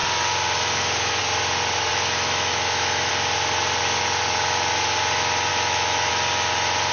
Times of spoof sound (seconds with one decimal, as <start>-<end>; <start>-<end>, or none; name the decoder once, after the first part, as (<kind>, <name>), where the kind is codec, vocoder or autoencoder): 1.9-3.1 (autoencoder, DAC-VAE); 5.5-6.1